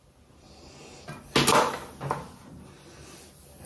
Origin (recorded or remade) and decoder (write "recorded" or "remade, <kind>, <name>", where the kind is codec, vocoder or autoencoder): recorded